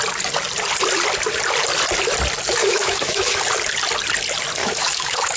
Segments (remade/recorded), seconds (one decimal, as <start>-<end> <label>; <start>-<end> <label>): 0.0-2.6 recorded; 2.6-3.4 remade; 3.4-4.6 recorded; 4.6-5.4 remade